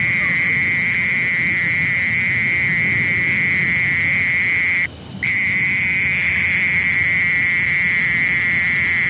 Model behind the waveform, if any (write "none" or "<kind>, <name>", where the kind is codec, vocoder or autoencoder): none